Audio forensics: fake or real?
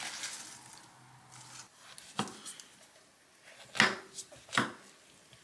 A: real